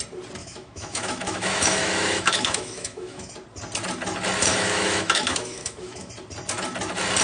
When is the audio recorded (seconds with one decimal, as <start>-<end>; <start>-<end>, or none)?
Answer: 0.0-0.4; 3.3-4.5; 6.1-7.2